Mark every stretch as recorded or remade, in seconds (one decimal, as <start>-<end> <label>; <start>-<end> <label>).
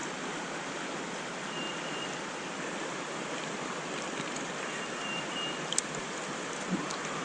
0.0-7.2 recorded